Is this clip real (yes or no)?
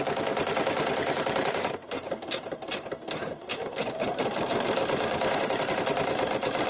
no